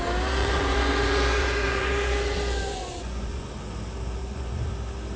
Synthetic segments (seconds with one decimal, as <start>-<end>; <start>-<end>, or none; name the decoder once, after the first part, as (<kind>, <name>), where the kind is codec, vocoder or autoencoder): 0.4-3.5 (vocoder, Vocos); 4.2-4.7